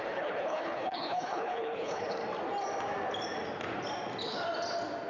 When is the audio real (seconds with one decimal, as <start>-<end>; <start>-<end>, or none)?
2.2-5.1